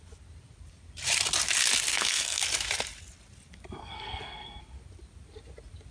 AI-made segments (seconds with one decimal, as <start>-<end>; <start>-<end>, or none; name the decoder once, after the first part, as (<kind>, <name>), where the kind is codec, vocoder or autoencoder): 1.9-2.4 (codec, SNAC); 3.8-4.6